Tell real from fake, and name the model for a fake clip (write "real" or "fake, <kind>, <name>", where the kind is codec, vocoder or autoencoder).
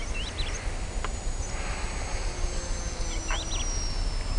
real